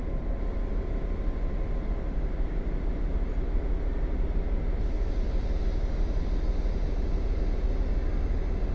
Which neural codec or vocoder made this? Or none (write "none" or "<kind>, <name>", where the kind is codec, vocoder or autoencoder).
none